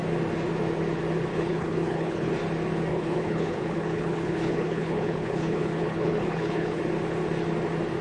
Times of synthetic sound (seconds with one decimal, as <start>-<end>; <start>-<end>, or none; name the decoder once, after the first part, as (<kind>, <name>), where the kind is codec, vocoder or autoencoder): 1.3-2.3 (codec, HILCodec); 2.9-6.8